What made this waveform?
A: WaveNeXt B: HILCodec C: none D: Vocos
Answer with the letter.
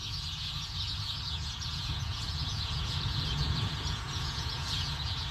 D